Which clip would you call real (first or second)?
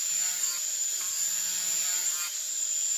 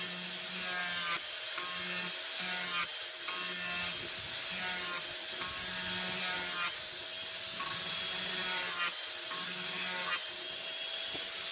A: second